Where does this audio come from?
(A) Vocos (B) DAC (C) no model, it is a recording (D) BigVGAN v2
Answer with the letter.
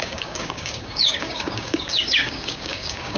B